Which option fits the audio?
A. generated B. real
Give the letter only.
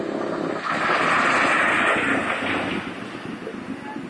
B